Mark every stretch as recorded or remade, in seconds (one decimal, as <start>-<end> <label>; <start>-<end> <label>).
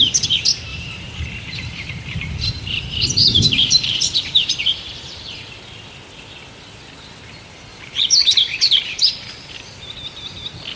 0.0-0.7 recorded; 0.7-5.5 remade; 5.5-7.7 recorded; 7.7-9.9 remade; 9.9-10.8 recorded